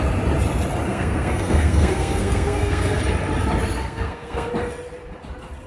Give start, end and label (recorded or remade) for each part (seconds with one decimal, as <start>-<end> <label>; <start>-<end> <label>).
0.0-0.9 recorded; 0.9-3.0 remade; 3.0-3.8 recorded; 3.8-4.5 remade; 4.5-5.7 recorded